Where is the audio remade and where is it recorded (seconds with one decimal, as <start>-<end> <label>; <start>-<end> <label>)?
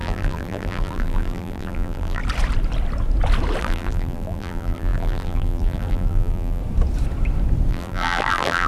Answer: 0.0-2.2 remade; 2.2-3.6 recorded; 3.6-6.6 remade; 6.6-7.7 recorded; 7.7-8.7 remade